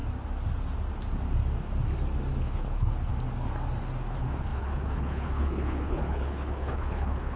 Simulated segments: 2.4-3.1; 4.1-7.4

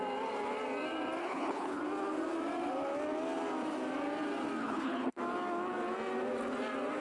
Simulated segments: 1.2-1.8; 4.6-5.2

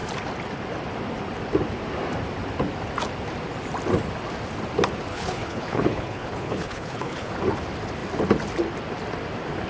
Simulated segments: 5.1-7.3

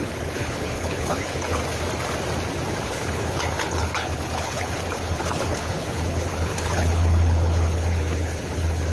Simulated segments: 0.0-1.6; 2.8-8.9

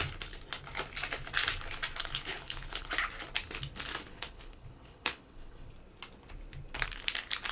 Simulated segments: 2.0-2.9; 4.1-5.7

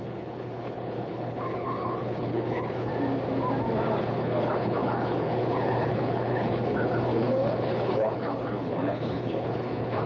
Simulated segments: 0.0-2.9; 4.0-10.1

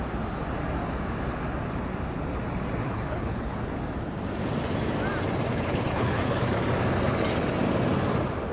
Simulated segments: 2.8-3.7; 5.5-6.5

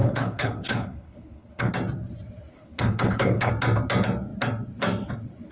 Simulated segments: 0.0-1.7; 2.5-3.5